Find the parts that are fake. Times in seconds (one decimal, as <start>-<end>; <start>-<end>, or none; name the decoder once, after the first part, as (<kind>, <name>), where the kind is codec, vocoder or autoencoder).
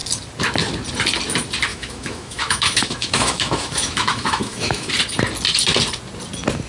1.7-4.9 (autoencoder, DAC-VAE)